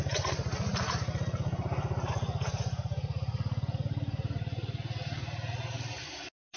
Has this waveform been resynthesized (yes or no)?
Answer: no